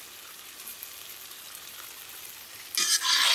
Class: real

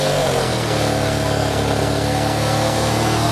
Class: fake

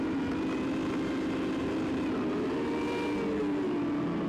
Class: real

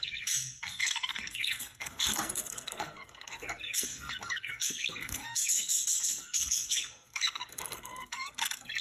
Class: fake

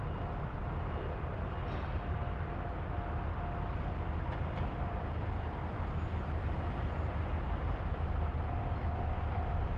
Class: real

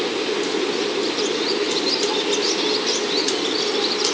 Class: real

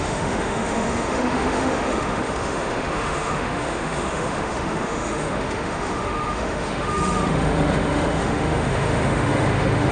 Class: fake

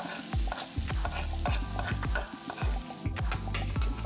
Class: real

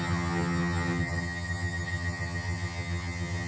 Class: fake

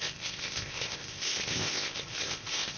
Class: fake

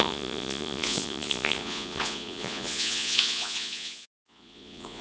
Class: fake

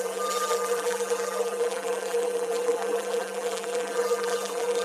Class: fake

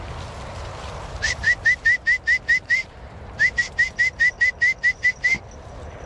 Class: real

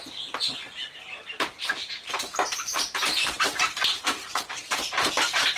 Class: fake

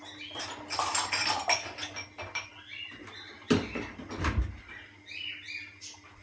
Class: real